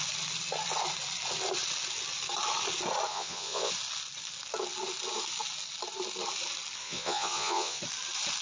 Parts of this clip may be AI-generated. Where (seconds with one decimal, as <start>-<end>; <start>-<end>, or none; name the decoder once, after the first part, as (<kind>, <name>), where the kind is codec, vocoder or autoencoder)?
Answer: 3.1-3.7 (vocoder, Vocos); 6.8-7.8